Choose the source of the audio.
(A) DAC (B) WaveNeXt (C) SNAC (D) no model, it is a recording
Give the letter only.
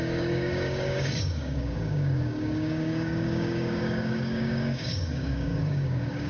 A